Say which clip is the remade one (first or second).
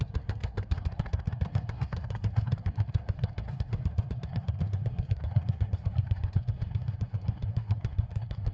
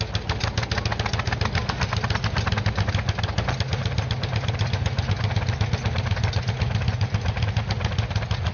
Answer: first